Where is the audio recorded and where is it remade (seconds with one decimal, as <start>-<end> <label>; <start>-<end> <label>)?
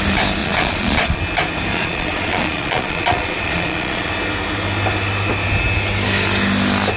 0.0-0.4 recorded; 0.4-1.2 remade; 1.2-1.7 recorded; 1.7-4.1 remade; 4.1-7.0 recorded